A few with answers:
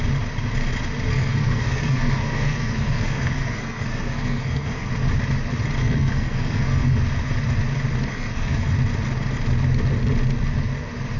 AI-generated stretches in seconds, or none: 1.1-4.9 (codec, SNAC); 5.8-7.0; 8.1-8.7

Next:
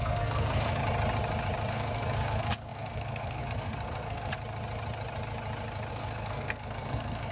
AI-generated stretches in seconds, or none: 0.0-0.8 (codec, SNAC); 1.7-4.3; 5.9-7.3

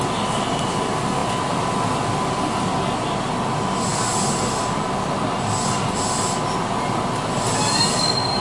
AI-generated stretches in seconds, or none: none

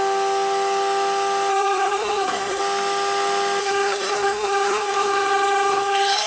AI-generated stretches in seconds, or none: 1.5-2.6 (codec, SNAC); 3.6-6.3

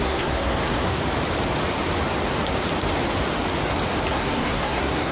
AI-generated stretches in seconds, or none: 0.0-1.0 (codec, SNAC); 4.1-5.1